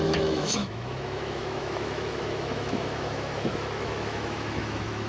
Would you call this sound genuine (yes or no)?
no